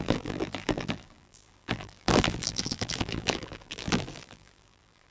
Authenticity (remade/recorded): remade